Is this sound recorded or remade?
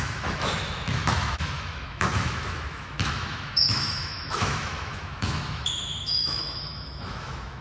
remade